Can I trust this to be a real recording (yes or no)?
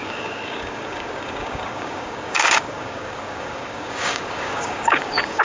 no